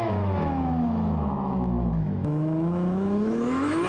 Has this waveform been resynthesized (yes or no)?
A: yes